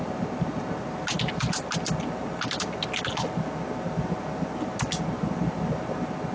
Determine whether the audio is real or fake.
real